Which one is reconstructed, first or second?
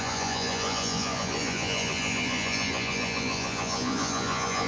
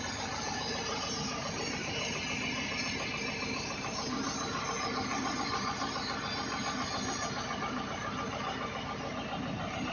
first